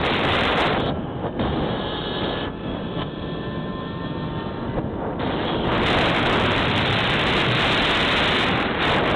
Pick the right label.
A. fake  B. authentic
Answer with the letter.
B